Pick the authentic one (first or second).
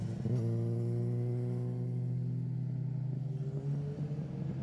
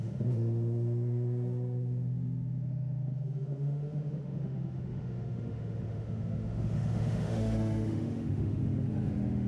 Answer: first